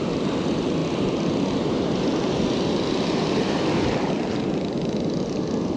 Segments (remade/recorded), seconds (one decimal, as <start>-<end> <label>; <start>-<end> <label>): 0.0-5.8 recorded